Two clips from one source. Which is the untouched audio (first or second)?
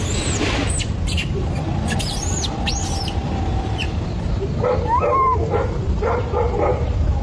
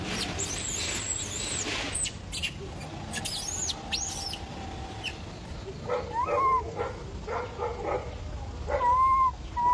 second